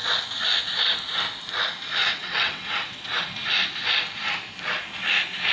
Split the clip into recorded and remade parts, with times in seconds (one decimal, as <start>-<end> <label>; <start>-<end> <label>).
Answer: 0.0-2.0 recorded; 2.0-3.2 remade; 3.2-5.5 recorded